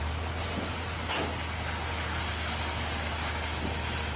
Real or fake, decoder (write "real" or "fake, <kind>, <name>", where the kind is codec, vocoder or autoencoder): real